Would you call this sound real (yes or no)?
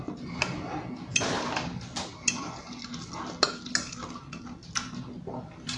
yes